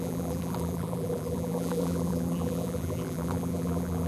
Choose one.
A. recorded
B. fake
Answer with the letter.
B